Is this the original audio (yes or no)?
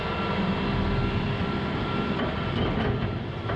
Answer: no